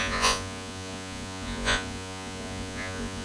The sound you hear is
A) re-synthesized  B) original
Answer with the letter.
A